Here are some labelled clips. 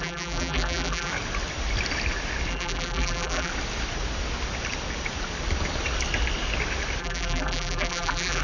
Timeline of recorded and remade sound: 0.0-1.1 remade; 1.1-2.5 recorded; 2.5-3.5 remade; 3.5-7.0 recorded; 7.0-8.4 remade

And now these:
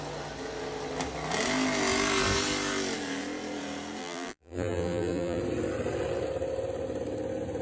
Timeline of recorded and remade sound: 0.0-4.0 recorded; 4.0-5.4 remade; 5.4-7.6 recorded